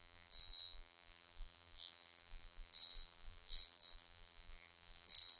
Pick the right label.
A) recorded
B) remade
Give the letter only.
B